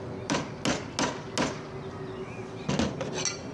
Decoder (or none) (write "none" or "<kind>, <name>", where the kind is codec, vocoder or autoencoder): none